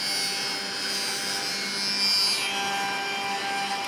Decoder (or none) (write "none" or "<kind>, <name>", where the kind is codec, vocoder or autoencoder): none